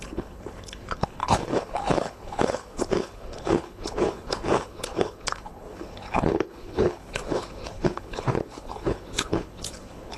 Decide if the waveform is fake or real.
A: fake